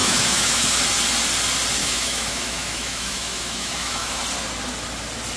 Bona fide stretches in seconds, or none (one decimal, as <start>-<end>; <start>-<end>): 0.8-1.8; 4.2-5.4